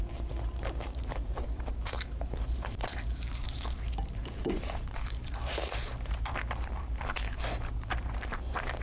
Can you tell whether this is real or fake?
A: fake